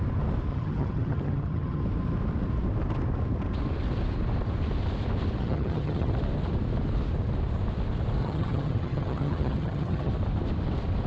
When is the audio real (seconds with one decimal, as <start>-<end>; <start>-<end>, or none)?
0.0-0.5; 1.8-5.4; 6.1-8.2; 10.1-11.1